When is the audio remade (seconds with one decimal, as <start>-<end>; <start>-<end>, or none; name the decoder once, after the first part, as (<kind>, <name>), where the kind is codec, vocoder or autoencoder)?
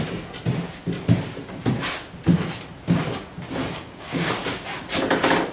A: 3.6-4.3 (codec, DAC)